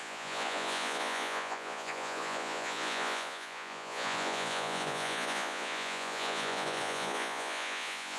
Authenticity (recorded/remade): remade